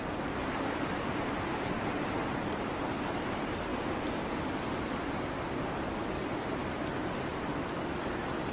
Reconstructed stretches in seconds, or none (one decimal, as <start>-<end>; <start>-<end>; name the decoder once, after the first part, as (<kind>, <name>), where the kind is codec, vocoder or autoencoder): none